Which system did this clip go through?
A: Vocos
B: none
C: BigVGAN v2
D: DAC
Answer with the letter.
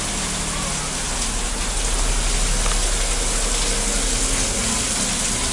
B